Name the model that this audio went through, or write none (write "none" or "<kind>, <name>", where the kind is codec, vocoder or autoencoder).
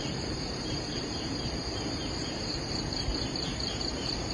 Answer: vocoder, BigVGAN v2